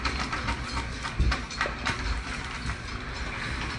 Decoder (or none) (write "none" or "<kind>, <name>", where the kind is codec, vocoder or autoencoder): none